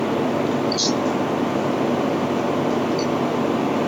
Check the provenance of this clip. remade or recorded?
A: recorded